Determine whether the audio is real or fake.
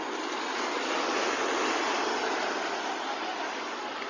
real